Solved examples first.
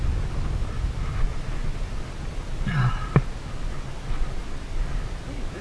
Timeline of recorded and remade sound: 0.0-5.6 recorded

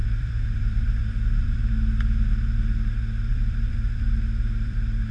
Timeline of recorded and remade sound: 0.0-1.7 remade; 1.7-3.3 recorded; 3.3-5.1 remade

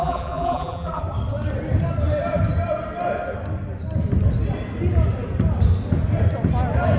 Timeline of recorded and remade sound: 0.0-1.0 remade; 1.0-7.0 recorded

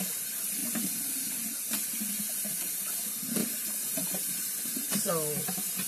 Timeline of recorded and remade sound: 0.0-3.4 recorded; 3.4-5.1 remade; 5.1-5.9 recorded

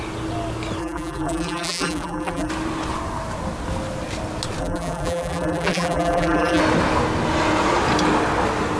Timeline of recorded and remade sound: 0.0-0.8 recorded; 0.8-2.5 remade; 2.5-4.6 recorded; 4.6-6.6 remade; 6.6-8.8 recorded